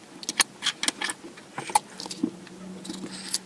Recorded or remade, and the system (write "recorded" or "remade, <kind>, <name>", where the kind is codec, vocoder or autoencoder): recorded